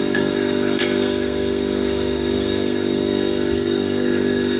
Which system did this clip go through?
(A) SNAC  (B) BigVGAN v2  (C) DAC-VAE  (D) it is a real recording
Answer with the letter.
A